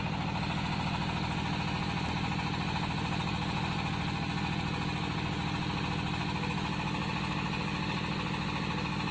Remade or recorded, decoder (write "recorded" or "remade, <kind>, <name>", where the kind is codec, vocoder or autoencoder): recorded